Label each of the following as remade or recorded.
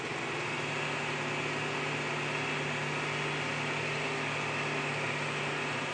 recorded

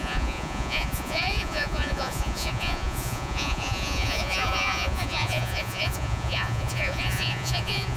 remade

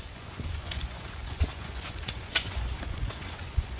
remade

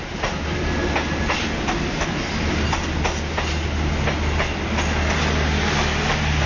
recorded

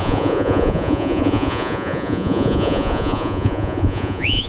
remade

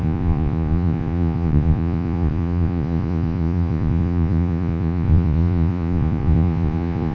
remade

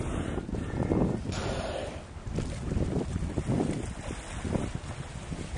recorded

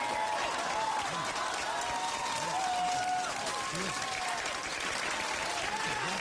recorded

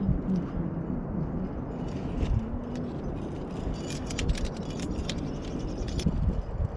recorded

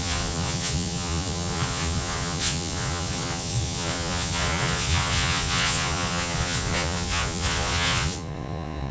remade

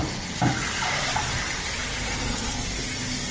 recorded